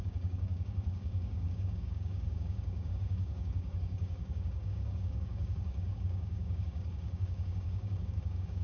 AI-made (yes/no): yes